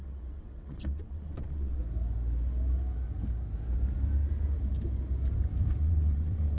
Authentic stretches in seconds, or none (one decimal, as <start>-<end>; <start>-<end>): 1.8-5.8